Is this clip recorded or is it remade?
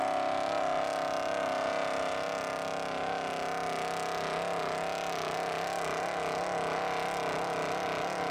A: recorded